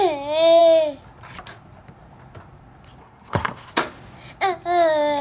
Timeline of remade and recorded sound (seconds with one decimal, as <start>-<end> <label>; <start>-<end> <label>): 0.0-3.0 recorded; 3.0-3.7 remade; 3.7-5.2 recorded